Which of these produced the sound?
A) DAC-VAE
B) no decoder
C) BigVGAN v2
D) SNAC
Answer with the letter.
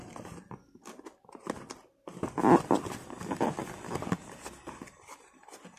B